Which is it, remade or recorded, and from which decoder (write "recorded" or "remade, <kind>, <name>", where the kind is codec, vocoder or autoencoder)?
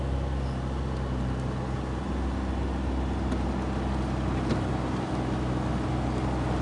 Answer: recorded